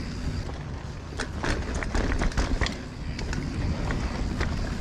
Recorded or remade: recorded